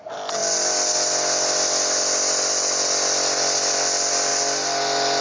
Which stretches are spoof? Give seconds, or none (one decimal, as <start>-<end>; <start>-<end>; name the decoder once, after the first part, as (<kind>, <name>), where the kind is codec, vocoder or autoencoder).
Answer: 0.4-2.5 (vocoder, BigVGAN v2)

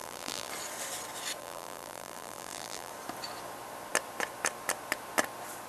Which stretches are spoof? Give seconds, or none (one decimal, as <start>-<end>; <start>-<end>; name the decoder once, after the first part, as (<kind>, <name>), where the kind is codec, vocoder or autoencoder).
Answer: 0.0-0.5 (vocoder, BigVGAN v2); 1.4-2.9

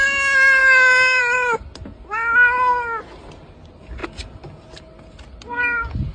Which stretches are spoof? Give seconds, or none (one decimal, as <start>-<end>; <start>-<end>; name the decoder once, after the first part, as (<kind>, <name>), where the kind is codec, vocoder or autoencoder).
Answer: none

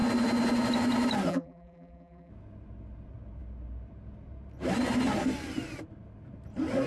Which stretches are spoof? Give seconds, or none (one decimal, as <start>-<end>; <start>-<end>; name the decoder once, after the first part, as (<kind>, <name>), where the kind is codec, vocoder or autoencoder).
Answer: 1.3-2.3 (vocoder, BigVGAN v2)

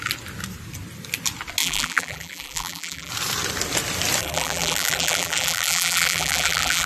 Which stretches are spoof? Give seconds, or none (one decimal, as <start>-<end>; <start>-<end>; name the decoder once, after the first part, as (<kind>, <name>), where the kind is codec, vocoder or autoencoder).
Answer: 1.6-3.1 (vocoder, BigVGAN v2); 4.2-6.9